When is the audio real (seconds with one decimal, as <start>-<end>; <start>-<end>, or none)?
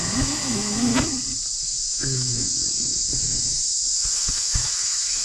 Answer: 0.9-1.6